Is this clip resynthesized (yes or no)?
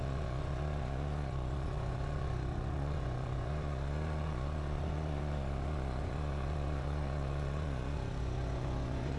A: yes